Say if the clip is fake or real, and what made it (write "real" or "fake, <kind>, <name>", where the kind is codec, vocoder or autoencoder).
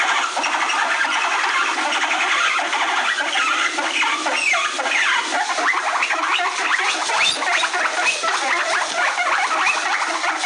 real